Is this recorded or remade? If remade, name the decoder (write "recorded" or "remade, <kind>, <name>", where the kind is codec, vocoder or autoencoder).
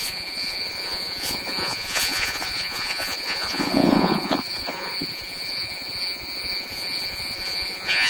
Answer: remade, vocoder, Vocos